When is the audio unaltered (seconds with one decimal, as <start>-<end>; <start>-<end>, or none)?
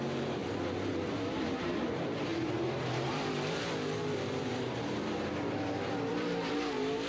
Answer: 0.4-1.6